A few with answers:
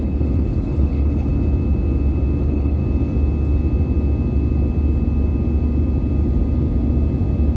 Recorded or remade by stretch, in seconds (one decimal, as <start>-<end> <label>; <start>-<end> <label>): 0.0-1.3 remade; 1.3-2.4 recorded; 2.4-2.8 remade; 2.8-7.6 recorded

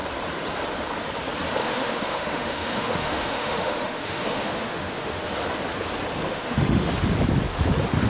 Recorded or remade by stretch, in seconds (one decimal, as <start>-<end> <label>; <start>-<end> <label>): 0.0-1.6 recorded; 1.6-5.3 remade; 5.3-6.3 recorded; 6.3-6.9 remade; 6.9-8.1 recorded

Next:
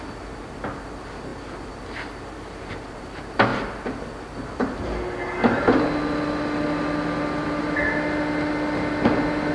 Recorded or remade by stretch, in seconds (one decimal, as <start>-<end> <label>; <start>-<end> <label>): 0.0-9.5 recorded

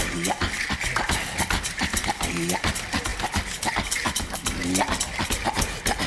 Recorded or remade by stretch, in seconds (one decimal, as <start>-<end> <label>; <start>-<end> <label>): 0.0-6.1 recorded

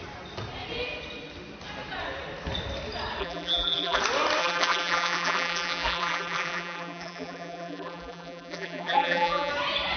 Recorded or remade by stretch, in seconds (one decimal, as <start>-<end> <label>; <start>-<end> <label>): 0.0-3.2 recorded; 3.2-4.0 remade; 4.0-4.4 recorded; 4.4-9.5 remade; 9.5-10.0 recorded

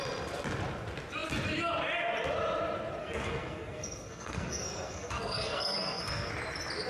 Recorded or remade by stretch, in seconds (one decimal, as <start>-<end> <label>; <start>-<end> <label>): 0.0-3.0 recorded; 3.0-6.3 remade; 6.3-6.9 recorded

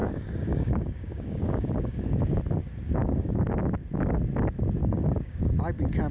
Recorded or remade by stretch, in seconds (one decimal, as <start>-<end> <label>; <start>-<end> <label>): 0.0-2.4 remade; 2.4-3.0 recorded; 3.0-3.6 remade; 3.6-4.8 recorded; 4.8-5.5 remade; 5.5-6.1 recorded

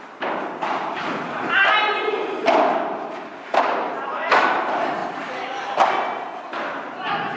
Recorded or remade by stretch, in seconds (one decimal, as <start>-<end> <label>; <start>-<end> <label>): 0.0-7.4 recorded